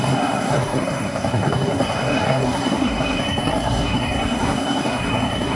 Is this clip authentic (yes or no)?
no